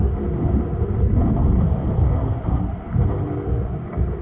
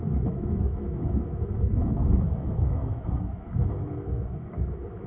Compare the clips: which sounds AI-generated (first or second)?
second